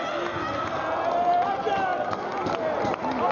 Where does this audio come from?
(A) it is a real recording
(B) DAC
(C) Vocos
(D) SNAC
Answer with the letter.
A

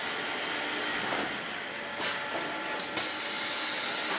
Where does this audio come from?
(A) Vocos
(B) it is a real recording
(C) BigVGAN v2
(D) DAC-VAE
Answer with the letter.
B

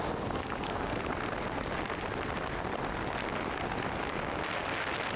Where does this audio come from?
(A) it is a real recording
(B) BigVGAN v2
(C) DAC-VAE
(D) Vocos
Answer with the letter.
A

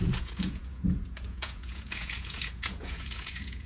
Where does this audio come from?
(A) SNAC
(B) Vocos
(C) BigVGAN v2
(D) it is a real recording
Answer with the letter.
B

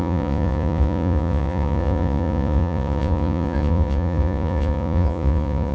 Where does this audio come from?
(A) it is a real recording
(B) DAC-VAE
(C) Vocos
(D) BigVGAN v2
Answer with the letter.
C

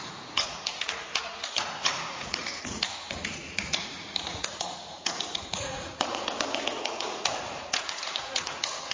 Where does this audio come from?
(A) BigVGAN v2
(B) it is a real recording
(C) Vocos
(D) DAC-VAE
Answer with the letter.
C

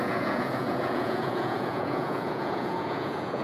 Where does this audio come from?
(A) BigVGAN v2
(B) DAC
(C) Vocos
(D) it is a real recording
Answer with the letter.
C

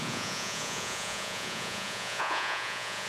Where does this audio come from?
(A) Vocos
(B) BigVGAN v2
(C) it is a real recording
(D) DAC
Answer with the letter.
A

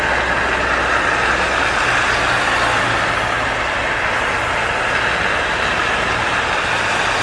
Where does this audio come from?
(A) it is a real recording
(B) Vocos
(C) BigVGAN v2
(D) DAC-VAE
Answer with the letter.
A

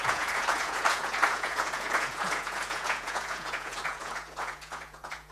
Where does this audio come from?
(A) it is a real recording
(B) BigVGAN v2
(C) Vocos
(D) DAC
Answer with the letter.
C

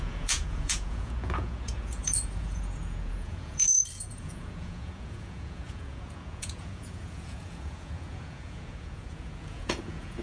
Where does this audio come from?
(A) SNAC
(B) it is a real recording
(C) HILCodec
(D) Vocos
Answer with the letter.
D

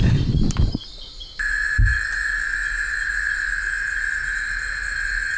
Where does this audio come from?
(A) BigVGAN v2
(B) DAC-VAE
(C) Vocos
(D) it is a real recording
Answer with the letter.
D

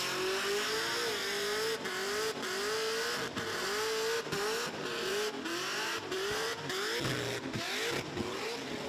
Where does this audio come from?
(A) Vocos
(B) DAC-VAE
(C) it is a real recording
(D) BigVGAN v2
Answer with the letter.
C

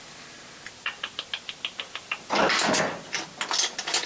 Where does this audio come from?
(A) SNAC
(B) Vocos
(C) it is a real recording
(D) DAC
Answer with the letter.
C